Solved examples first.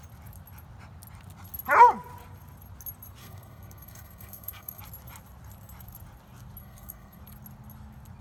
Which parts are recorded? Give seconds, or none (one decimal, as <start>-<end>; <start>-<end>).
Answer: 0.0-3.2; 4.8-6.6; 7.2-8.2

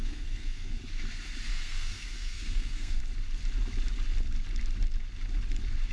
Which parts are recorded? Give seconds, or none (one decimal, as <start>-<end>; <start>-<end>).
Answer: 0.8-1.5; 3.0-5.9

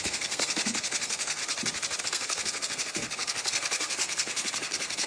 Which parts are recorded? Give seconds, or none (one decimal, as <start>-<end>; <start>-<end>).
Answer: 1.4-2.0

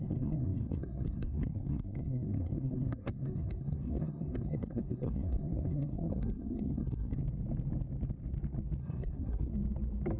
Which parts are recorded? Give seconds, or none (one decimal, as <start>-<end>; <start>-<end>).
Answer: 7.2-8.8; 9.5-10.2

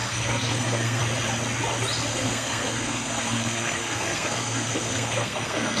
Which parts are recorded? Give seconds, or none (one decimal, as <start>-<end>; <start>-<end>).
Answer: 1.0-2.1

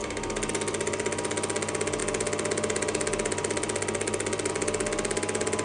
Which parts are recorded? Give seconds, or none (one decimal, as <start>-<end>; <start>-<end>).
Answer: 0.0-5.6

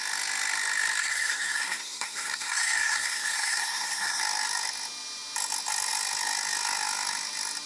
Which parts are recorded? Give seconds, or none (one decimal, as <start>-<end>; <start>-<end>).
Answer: 0.0-1.0; 4.2-7.7